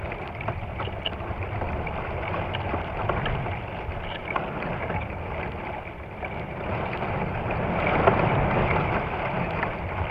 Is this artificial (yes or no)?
no